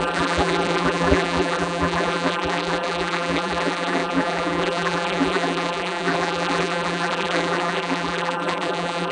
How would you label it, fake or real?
fake